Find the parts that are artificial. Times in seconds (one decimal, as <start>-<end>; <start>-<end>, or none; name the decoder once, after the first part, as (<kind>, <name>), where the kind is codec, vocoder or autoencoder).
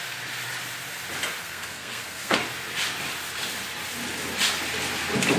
1.4-2.4 (codec, SNAC)